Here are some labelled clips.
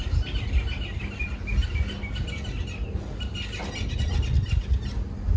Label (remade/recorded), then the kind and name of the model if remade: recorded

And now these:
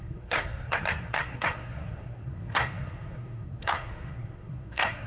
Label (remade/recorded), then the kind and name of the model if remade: remade, codec, SNAC